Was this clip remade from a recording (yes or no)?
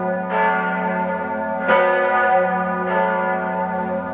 no